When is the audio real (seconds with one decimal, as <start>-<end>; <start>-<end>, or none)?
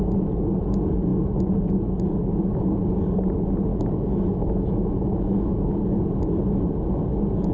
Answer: 0.0-3.7; 5.8-7.5